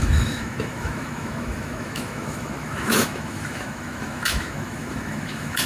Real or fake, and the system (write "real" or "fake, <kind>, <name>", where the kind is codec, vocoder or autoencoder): fake, autoencoder, DAC-VAE